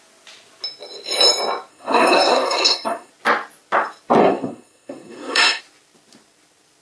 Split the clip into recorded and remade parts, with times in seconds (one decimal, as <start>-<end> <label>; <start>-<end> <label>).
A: 0.0-1.7 recorded; 1.7-3.1 remade; 3.1-4.2 recorded; 4.2-5.6 remade; 5.6-6.8 recorded